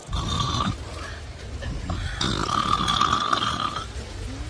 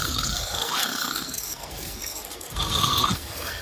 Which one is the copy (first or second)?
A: second